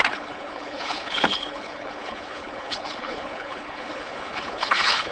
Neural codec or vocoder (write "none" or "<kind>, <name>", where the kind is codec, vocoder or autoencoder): codec, HILCodec